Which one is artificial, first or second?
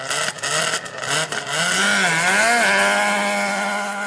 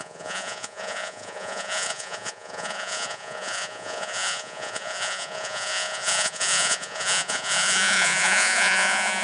second